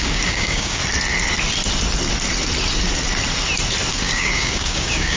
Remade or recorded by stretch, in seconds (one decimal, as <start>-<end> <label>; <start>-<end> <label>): 0.0-0.8 remade; 0.8-3.9 recorded; 3.9-5.2 remade